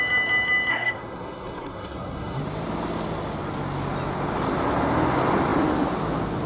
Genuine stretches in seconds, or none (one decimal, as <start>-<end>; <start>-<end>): 0.0-0.7; 2.4-6.5